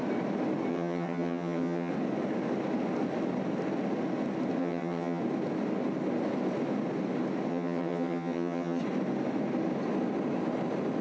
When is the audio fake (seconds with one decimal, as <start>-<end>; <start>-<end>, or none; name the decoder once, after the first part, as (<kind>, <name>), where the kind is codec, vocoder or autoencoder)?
0.7-1.9 (vocoder, HiFi-GAN); 4.6-5.2; 7.5-8.8